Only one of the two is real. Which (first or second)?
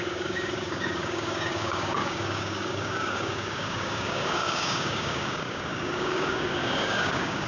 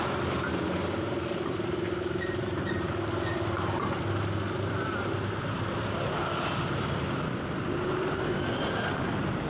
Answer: second